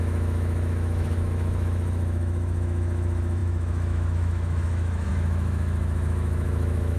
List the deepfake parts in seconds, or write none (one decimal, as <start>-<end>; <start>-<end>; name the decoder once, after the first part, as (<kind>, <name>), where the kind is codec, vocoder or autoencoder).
0.0-7.0 (autoencoder, DAC-VAE)

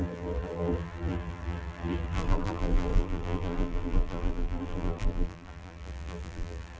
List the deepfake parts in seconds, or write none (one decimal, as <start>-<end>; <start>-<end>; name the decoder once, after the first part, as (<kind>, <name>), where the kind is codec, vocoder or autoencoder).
0.0-6.8 (vocoder, BigVGAN v2)

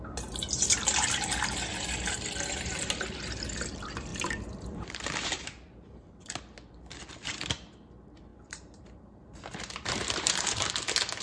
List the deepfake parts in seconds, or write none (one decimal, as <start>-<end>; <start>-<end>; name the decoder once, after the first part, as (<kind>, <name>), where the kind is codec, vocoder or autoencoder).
4.1-6.2 (vocoder, BigVGAN v2); 8.3-10.7

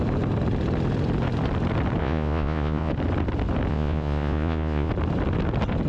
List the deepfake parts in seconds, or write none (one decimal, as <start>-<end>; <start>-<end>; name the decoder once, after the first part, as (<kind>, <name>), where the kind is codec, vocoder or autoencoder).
2.0-2.9 (vocoder, Vocos); 3.7-4.9

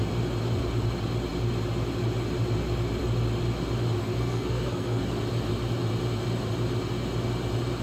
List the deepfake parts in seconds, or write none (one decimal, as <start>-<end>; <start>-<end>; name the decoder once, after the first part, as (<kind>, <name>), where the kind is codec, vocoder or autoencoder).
4.0-5.0 (codec, SNAC)